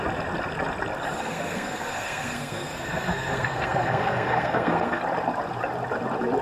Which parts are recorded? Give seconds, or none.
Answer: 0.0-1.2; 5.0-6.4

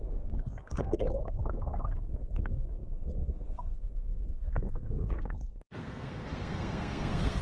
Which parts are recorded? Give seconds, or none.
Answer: none